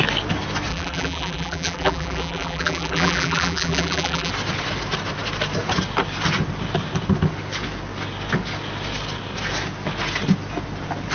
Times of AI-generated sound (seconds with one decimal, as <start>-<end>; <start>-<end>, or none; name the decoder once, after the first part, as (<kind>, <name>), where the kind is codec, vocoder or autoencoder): 0.7-4.3 (vocoder, BigVGAN v2)